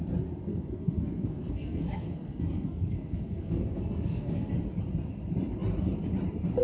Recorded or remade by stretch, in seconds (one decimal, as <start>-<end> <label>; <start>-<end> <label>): 0.0-0.5 recorded; 0.5-4.5 remade; 4.5-6.6 recorded